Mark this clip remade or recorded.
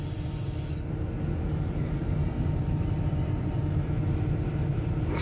recorded